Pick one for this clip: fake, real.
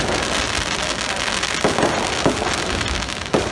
real